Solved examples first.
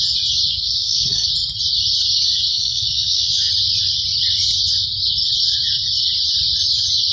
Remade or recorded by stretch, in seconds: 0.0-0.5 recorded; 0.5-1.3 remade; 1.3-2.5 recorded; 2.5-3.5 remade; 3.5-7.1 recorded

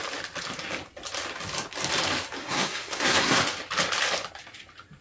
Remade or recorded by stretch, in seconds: 0.0-2.4 recorded; 2.4-3.4 remade; 3.4-5.0 recorded

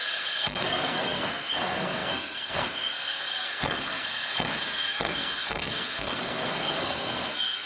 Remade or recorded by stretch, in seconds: 0.0-7.7 remade

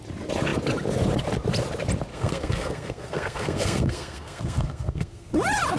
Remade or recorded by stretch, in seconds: 0.0-2.1 recorded; 2.1-5.3 remade; 5.3-5.8 recorded